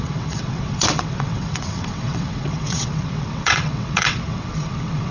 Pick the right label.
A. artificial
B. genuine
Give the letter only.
A